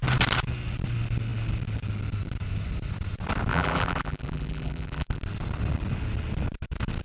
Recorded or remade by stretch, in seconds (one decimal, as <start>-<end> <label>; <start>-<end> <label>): 0.0-3.5 recorded; 3.5-5.2 remade; 5.2-7.0 recorded

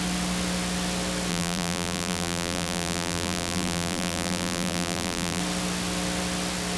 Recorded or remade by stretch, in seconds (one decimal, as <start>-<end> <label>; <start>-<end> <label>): 0.0-1.3 recorded; 1.3-5.4 remade; 5.4-6.8 recorded

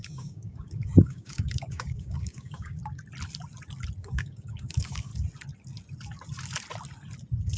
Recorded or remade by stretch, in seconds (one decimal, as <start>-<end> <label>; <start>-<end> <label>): 0.0-2.8 remade; 2.8-4.0 recorded; 4.0-5.1 remade; 5.1-7.6 recorded